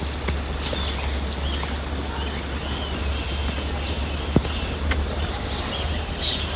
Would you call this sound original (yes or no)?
yes